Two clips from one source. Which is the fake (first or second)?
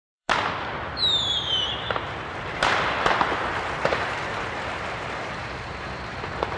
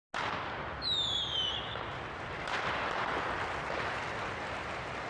first